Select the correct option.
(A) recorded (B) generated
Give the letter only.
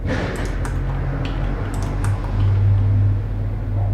A